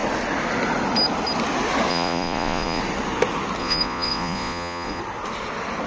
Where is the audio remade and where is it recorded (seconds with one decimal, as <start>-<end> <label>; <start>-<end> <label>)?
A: 0.0-1.9 recorded; 1.9-2.8 remade; 2.8-3.6 recorded; 3.6-5.0 remade; 5.0-5.9 recorded

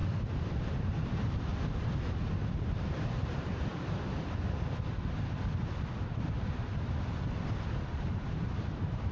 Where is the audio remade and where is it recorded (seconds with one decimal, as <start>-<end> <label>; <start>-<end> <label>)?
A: 0.0-0.6 recorded; 0.6-1.5 remade; 1.5-2.7 recorded; 2.7-3.7 remade; 3.7-7.9 recorded; 7.9-9.1 remade

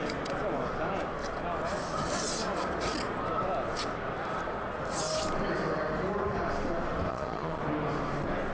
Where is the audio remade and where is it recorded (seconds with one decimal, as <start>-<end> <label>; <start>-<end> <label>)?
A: 0.0-7.1 recorded; 7.1-7.6 remade; 7.6-8.5 recorded

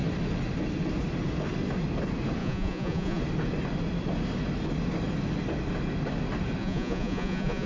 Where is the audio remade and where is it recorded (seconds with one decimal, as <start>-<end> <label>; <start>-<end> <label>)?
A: 0.0-2.4 recorded; 2.4-3.2 remade; 3.2-6.6 recorded; 6.6-7.7 remade

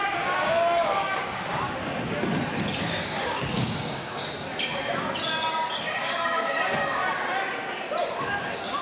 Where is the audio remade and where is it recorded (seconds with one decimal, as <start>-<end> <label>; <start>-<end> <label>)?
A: 0.0-1.8 remade; 1.8-2.8 recorded; 2.8-4.2 remade; 4.2-5.8 recorded; 5.8-7.0 remade; 7.0-8.0 recorded; 8.0-8.8 remade

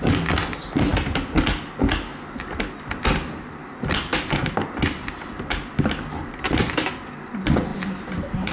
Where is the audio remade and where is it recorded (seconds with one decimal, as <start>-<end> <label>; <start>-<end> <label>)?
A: 0.0-7.7 recorded; 7.7-8.5 remade